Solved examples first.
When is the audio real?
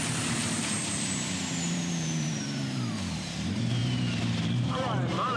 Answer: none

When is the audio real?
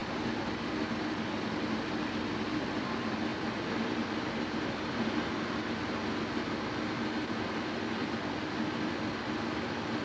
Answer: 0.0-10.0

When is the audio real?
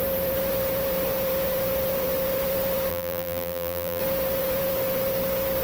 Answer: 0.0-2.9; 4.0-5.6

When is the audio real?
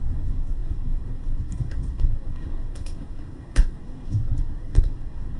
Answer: none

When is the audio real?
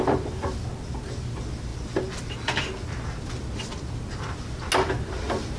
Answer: 0.0-5.6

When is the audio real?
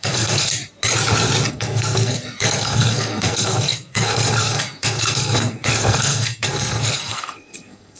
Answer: 0.5-1.5